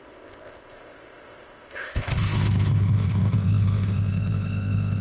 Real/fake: fake